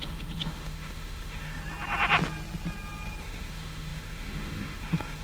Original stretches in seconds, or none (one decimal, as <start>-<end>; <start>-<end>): 1.6-3.2